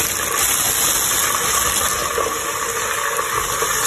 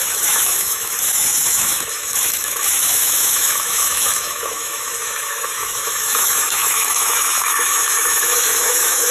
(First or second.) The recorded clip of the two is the first